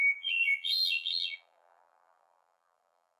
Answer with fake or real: fake